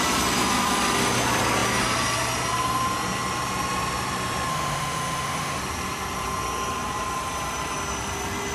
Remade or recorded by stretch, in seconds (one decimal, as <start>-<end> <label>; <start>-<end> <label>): 0.0-4.5 recorded; 4.5-5.6 remade; 5.6-8.5 recorded